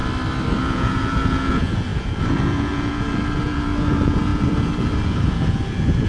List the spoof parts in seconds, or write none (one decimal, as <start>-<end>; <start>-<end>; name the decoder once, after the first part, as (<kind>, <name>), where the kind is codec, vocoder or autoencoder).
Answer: 0.6-6.1 (vocoder, Vocos)